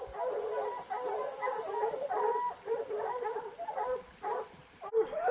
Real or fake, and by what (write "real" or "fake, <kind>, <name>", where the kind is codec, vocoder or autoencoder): real